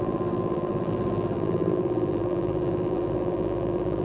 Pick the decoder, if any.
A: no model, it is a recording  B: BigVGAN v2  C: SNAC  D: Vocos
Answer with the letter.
B